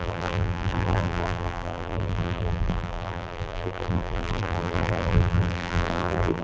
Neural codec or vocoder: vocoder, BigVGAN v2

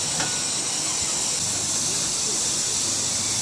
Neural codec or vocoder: none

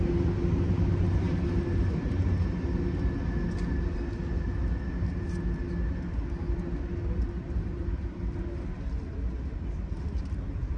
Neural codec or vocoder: none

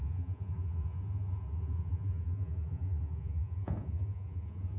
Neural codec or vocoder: vocoder, Vocos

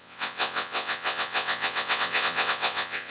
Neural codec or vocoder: vocoder, WaveNeXt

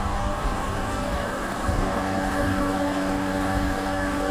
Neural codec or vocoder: codec, DAC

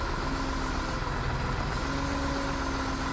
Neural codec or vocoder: none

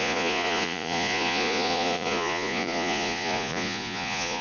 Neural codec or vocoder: vocoder, Vocos